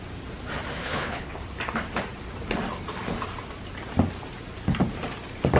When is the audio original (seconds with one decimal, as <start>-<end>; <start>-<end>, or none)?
0.0-0.8; 1.4-5.6

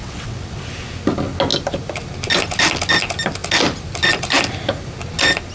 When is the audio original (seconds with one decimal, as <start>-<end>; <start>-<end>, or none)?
0.7-5.5

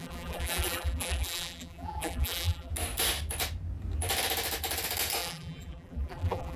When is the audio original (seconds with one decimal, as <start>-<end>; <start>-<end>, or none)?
2.7-5.2

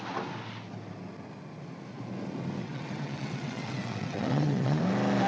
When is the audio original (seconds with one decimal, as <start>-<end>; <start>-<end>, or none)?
0.0-2.6; 4.8-5.3